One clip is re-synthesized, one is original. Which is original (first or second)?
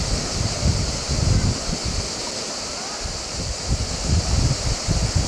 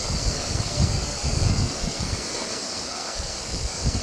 first